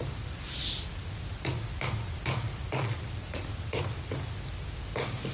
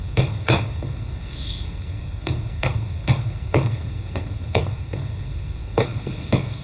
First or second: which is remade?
second